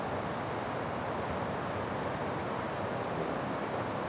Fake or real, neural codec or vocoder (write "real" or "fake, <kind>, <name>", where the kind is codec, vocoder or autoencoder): real